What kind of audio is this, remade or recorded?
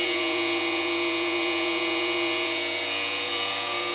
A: remade